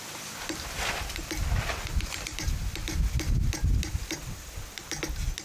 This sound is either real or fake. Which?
real